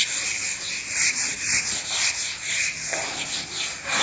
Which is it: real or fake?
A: real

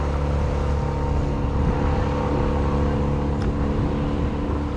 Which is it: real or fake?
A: real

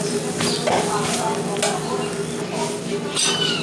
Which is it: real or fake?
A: real